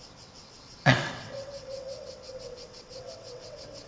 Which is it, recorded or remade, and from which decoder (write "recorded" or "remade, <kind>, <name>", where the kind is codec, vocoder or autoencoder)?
remade, vocoder, WaveNeXt